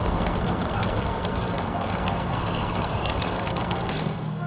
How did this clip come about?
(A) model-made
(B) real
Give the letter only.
A